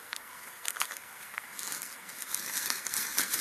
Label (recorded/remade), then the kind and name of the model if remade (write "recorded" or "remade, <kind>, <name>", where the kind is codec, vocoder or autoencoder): remade, codec, SNAC